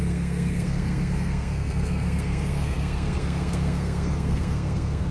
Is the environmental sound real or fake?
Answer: fake